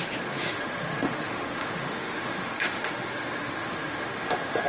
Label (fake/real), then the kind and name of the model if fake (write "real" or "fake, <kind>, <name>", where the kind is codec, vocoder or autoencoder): fake, autoencoder, DAC-VAE